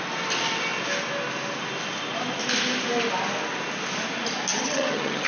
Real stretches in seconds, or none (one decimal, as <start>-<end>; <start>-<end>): 0.0-4.5